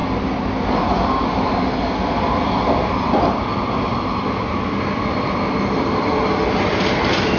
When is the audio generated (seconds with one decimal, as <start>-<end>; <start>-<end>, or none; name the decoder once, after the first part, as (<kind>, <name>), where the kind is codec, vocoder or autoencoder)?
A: 3.9-7.4 (vocoder, BigVGAN v2)